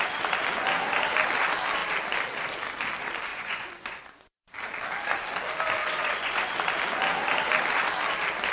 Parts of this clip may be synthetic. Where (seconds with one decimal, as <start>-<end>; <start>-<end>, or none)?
3.3-4.2; 5.8-6.5